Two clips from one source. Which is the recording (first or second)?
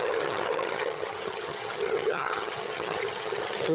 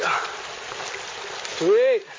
second